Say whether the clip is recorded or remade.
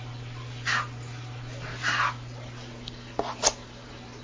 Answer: recorded